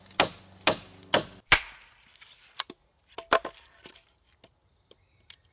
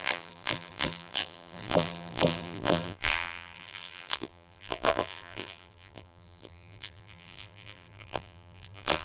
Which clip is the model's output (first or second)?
second